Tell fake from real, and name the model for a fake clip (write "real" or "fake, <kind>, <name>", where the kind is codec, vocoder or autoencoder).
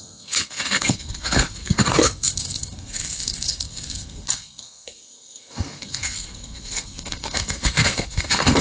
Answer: fake, codec, SNAC